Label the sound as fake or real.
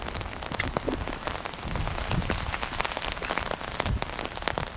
real